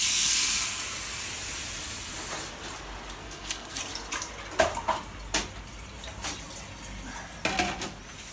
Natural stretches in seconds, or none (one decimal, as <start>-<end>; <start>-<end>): 0.8-3.2; 3.8-8.3